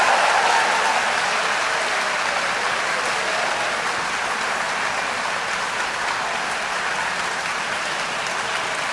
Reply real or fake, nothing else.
real